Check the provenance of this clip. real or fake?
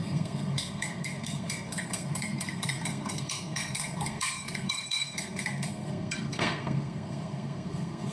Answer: fake